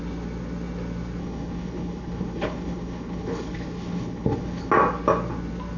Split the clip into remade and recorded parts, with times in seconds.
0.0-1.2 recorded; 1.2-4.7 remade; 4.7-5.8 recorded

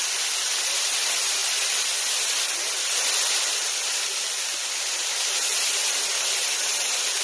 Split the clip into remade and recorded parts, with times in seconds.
0.0-7.2 recorded

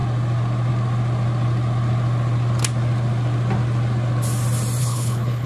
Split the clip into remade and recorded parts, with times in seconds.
0.0-4.8 recorded; 4.8-5.5 remade

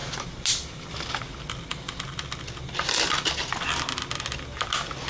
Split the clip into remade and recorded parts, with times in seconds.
0.0-5.1 recorded

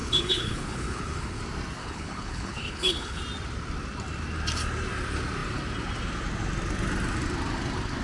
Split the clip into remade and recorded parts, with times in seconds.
0.0-1.4 remade; 1.4-1.8 recorded; 1.8-3.2 remade; 3.2-8.0 recorded

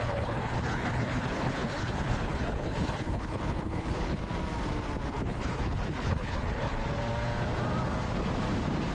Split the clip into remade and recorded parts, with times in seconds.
0.0-4.2 remade; 4.2-5.1 recorded; 5.1-6.8 remade; 6.8-8.9 recorded

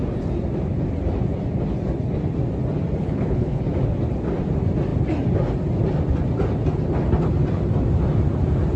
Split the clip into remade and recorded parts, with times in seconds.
0.0-3.0 recorded; 3.0-3.6 remade; 3.6-8.8 recorded

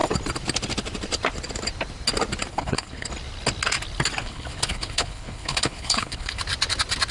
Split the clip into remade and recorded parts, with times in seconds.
0.0-2.5 recorded; 2.5-3.1 remade; 3.1-4.2 recorded; 4.2-6.4 remade; 6.4-7.1 recorded